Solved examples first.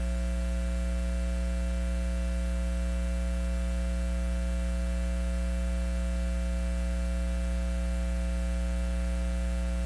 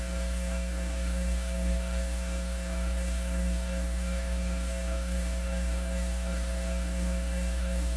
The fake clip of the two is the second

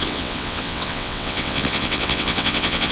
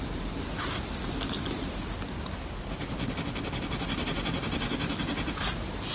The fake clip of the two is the first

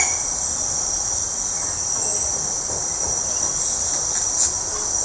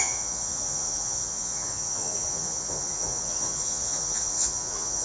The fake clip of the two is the second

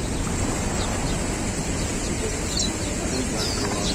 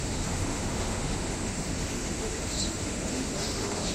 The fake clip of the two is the second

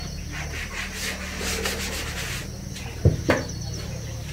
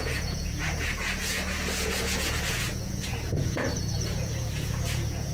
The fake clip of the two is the second